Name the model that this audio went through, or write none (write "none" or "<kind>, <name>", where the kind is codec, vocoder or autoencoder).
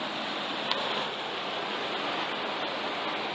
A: none